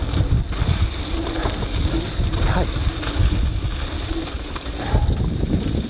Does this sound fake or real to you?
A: real